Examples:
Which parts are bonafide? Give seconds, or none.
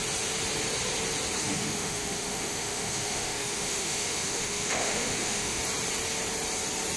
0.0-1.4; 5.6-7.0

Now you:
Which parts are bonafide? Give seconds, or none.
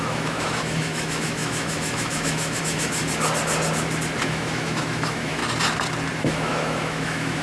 3.0-4.2; 5.4-6.2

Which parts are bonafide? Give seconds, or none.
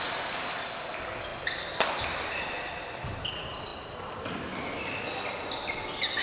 0.0-6.2